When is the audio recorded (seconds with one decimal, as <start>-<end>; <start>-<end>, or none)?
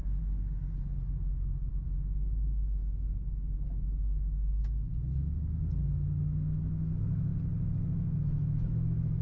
0.0-1.7; 2.8-5.8; 7.3-8.2